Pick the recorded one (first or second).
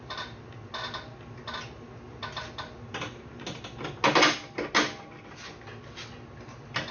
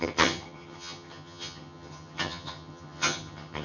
first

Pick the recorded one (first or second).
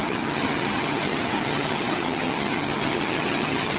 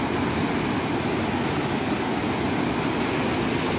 second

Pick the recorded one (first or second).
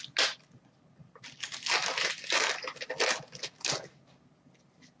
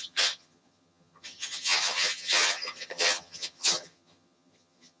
first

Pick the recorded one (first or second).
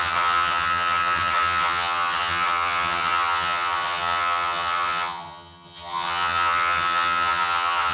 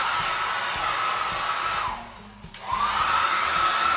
second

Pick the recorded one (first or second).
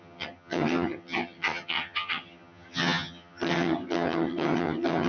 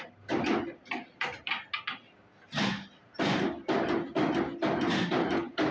second